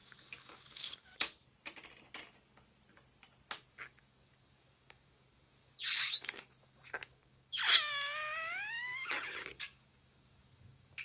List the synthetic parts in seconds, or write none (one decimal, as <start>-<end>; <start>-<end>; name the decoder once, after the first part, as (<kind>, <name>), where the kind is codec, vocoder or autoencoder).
0.0-1.1 (codec, DAC); 3.7-7.6; 8.7-11.0